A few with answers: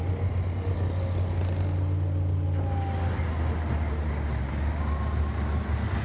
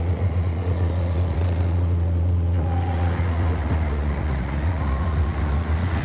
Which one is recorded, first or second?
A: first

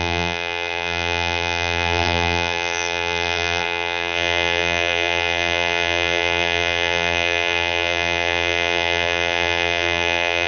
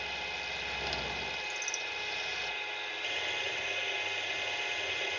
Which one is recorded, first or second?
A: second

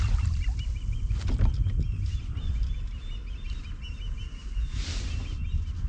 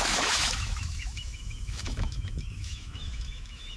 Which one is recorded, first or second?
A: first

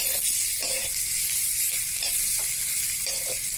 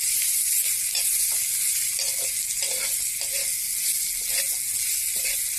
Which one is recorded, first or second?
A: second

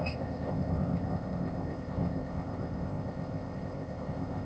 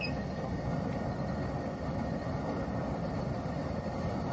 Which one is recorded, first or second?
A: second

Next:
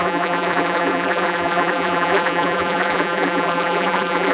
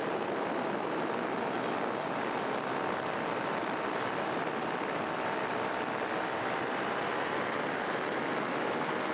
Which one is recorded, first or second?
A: second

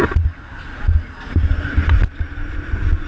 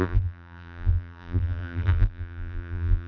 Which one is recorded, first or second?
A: first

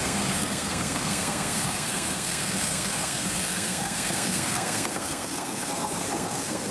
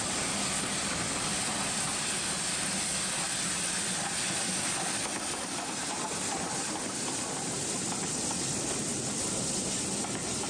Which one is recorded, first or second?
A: second